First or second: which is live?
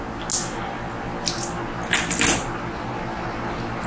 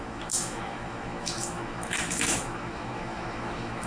first